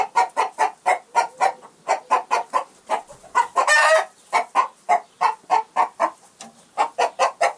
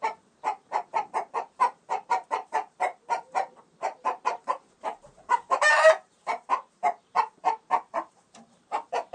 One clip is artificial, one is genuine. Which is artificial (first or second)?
second